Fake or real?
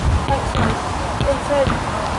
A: real